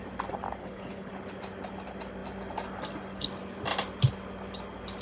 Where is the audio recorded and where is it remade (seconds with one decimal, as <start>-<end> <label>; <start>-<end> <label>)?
0.0-0.6 recorded; 0.6-1.1 remade; 1.1-5.0 recorded